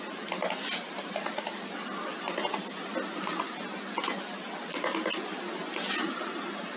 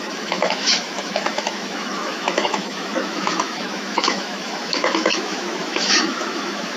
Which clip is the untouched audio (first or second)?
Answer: first